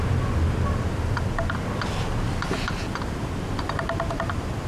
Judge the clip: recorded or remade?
recorded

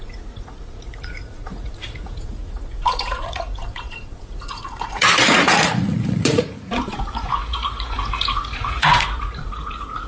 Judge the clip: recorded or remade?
remade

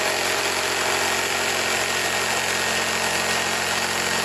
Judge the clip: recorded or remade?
recorded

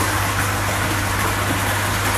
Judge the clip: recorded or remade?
recorded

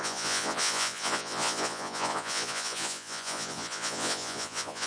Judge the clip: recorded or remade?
remade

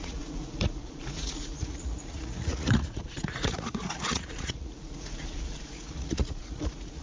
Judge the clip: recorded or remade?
remade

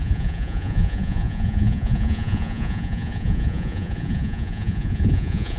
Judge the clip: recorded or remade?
remade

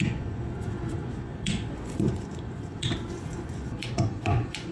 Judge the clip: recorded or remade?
remade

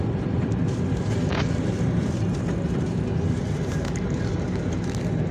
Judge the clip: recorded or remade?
recorded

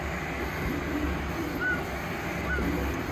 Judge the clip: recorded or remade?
recorded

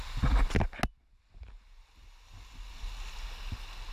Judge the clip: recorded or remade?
recorded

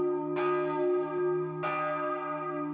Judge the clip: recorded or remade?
recorded